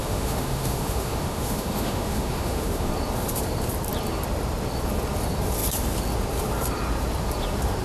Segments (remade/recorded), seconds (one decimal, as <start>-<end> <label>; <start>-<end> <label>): 0.0-2.9 remade; 2.9-7.8 recorded